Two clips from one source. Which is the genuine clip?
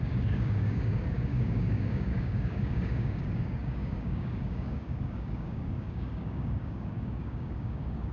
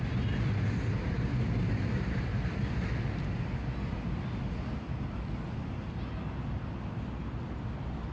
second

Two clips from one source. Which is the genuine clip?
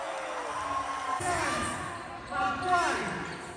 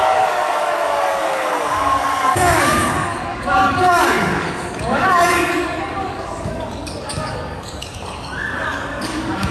first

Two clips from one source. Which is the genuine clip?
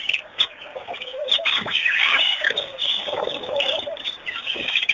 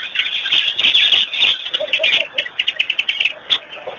second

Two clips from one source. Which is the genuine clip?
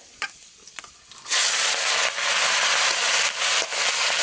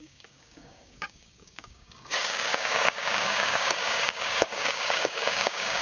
first